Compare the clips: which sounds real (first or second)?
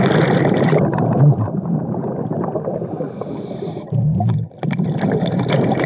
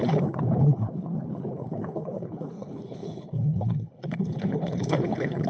first